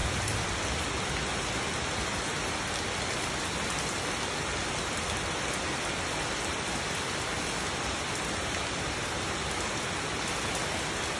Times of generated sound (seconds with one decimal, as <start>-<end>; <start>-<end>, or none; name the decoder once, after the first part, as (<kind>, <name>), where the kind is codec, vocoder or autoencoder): none